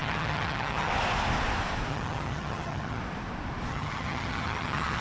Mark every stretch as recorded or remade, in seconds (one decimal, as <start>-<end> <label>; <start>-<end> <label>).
0.0-0.9 remade; 0.9-1.9 recorded; 1.9-3.0 remade; 3.0-3.7 recorded; 3.7-5.0 remade